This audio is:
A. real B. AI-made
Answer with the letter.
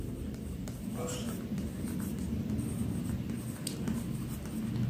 A